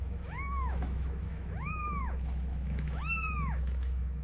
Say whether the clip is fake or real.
fake